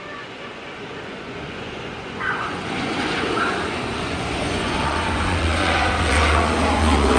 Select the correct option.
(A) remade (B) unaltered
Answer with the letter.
A